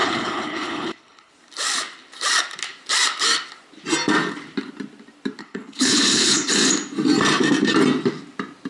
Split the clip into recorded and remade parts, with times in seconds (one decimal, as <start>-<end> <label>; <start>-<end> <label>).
0.0-1.3 remade; 1.3-5.4 recorded; 5.4-6.5 remade; 6.5-8.7 recorded